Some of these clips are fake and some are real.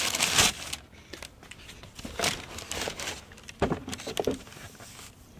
real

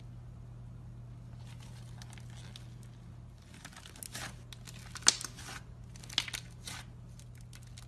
real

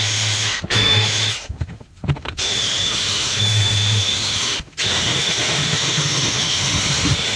fake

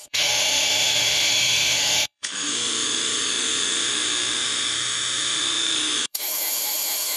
fake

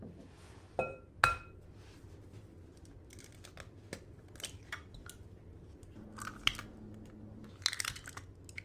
real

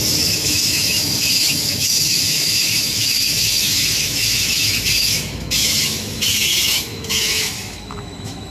fake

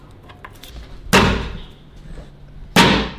real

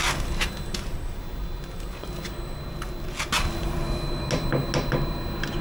real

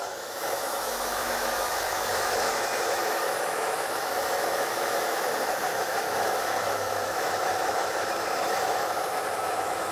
fake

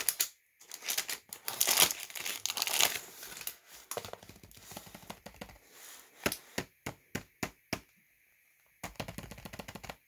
real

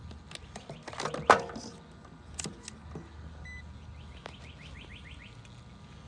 real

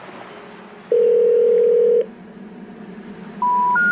real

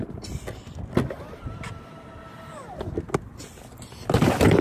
real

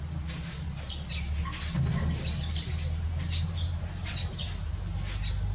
real